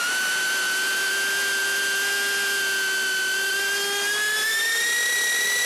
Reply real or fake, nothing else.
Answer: real